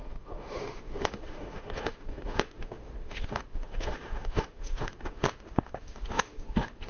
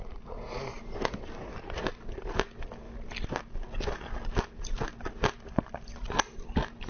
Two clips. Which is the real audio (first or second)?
second